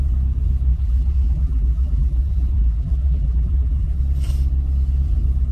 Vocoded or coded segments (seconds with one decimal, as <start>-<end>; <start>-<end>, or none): 0.7-4.0